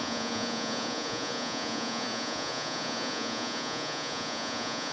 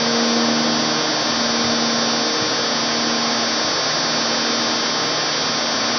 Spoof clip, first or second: first